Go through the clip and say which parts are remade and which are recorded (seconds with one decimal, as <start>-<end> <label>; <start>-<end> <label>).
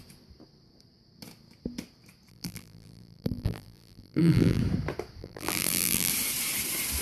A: 0.0-2.3 recorded; 2.3-4.6 remade; 4.6-5.2 recorded; 5.2-6.1 remade; 6.1-7.0 recorded